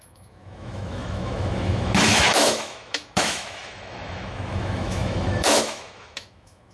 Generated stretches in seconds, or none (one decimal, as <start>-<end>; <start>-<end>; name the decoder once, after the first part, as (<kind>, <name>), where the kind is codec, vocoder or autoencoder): 0.0-6.7 (autoencoder, DAC-VAE)

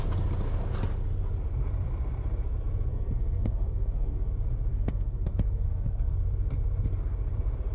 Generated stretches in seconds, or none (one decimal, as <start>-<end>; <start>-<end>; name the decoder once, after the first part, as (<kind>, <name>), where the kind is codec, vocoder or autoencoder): 2.9-4.3 (codec, SNAC); 4.7-6.1

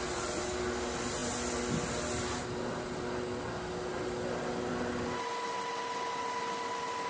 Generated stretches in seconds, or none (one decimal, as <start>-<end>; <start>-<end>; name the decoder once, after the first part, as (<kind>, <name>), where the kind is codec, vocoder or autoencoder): none